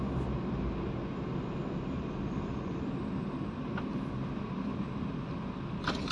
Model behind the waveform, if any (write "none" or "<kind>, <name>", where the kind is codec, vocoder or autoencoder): none